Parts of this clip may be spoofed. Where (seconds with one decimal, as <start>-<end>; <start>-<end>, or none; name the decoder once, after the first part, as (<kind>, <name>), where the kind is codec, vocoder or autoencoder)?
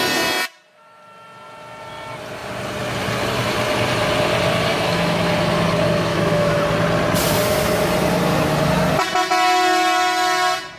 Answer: 4.7-5.3 (autoencoder, DAC-VAE); 6.1-6.6